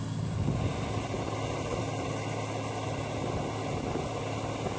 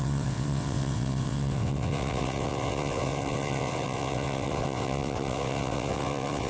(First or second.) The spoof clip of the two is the second